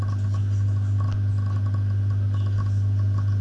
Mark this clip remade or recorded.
recorded